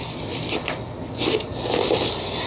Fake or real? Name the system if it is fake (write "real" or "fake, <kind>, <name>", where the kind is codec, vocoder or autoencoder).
real